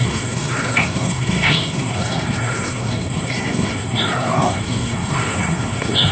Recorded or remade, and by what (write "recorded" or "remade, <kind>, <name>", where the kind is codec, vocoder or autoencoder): remade, codec, SNAC